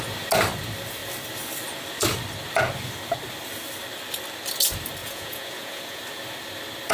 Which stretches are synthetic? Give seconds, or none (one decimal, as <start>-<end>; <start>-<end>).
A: 5.0-6.0